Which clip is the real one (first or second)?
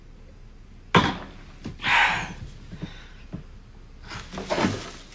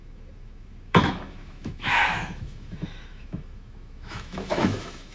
first